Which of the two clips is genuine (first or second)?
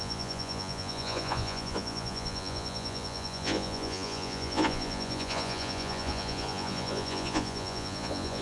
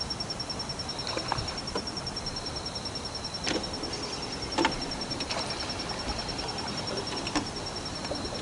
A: second